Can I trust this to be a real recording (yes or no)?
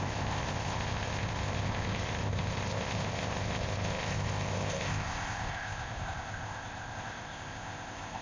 no